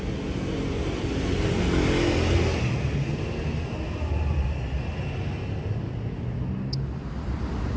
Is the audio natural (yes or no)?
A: yes